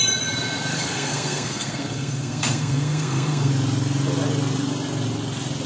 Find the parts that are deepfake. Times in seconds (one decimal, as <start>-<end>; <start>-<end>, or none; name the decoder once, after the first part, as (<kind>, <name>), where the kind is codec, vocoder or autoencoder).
0.7-3.5 (codec, SNAC)